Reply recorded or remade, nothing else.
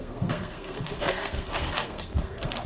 remade